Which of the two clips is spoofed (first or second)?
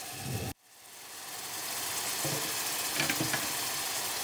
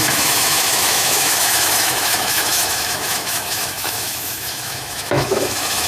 second